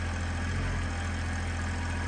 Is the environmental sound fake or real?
real